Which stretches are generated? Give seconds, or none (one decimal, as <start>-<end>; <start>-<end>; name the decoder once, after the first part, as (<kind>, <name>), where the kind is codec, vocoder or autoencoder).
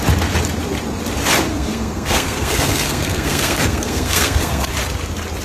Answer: 1.5-4.7 (codec, SNAC)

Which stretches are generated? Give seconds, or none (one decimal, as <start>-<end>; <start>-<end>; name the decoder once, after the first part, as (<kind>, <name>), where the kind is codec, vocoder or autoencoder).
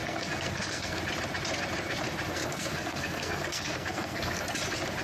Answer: 0.0-1.0 (codec, SNAC); 2.3-4.4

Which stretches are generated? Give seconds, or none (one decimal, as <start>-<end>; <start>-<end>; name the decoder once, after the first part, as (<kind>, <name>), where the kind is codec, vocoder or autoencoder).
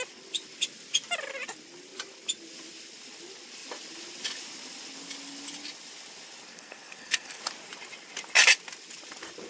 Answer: 6.5-7.4 (codec, SNAC)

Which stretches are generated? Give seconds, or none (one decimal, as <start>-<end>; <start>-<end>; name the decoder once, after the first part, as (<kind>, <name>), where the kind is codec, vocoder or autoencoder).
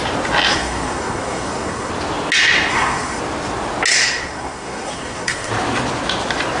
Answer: 0.5-1.9 (codec, SNAC); 2.7-3.2; 3.9-5.5